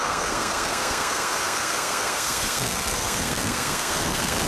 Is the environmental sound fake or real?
fake